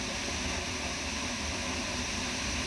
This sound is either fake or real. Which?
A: fake